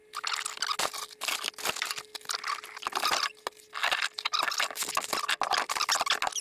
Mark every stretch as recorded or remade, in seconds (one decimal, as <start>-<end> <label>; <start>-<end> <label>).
0.0-6.4 recorded